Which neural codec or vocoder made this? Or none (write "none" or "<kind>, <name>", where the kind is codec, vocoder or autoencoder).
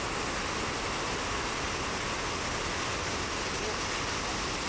none